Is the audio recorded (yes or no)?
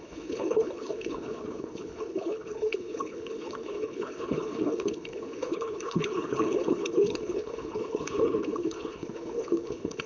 no